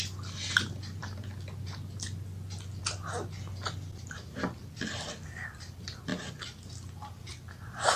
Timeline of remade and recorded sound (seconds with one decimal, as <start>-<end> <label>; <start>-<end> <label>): 0.0-8.0 recorded